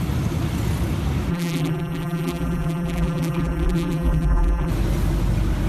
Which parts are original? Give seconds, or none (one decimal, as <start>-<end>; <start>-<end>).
0.0-1.3; 4.7-5.7